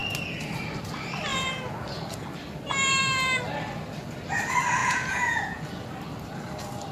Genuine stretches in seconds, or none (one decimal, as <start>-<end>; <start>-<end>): 0.0-4.8; 5.6-6.9